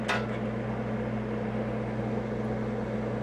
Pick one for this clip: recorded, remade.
recorded